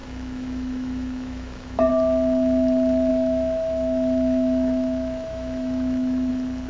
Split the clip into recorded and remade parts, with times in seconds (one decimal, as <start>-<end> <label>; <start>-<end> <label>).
0.0-1.9 remade; 1.9-3.1 recorded; 3.1-6.3 remade; 6.3-6.7 recorded